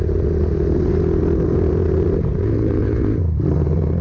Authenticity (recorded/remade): recorded